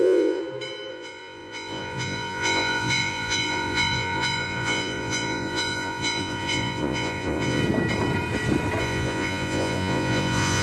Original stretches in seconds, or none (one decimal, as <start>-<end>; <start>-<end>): 0.4-0.9; 7.6-8.8